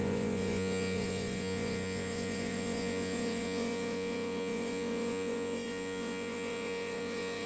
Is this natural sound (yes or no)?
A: no